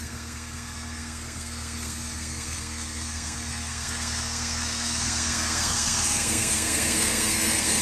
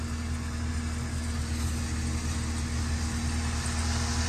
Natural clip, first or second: second